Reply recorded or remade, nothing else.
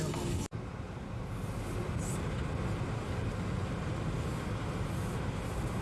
recorded